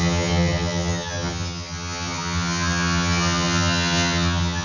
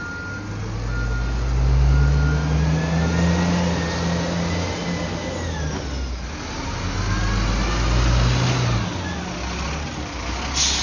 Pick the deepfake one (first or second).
first